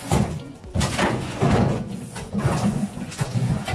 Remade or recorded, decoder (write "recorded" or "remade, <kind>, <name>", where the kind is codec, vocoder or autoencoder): remade, vocoder, Vocos